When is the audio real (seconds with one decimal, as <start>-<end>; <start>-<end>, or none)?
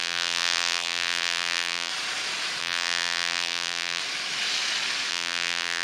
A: 1.9-2.6; 4.0-5.1